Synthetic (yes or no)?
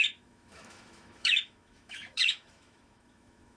yes